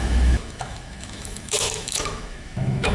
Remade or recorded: remade